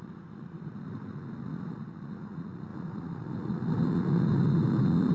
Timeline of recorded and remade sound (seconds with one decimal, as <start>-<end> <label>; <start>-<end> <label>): 0.0-5.1 remade